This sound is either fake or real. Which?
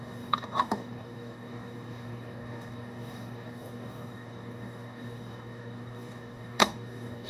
fake